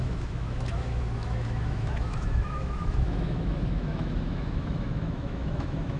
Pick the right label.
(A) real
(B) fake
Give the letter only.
B